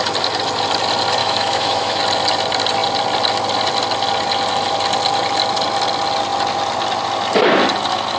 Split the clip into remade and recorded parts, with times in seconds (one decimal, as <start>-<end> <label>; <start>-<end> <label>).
0.0-1.2 recorded; 1.2-2.0 remade; 2.0-8.2 recorded